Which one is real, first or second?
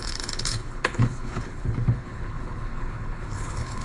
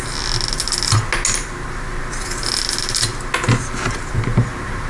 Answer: second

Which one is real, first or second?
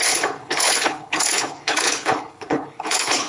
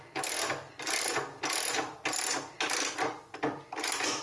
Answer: second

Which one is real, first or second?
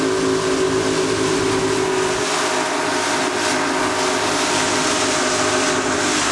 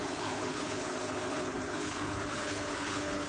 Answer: first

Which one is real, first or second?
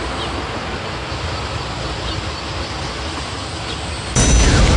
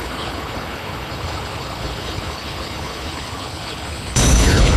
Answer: first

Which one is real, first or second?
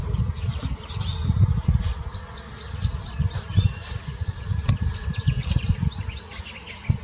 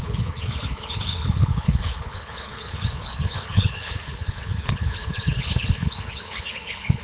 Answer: first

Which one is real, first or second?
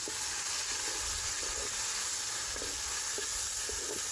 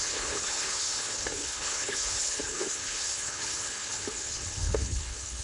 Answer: first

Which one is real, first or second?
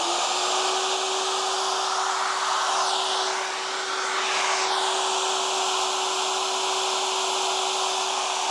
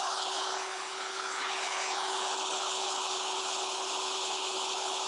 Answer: first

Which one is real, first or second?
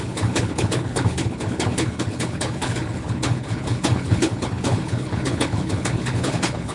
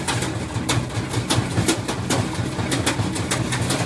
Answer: second